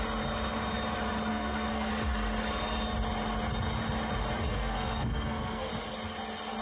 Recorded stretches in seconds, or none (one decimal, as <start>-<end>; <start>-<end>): 0.0-1.3; 1.9-4.5; 5.7-6.6